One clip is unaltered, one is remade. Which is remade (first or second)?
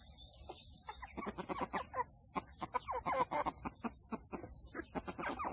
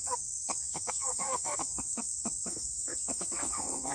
second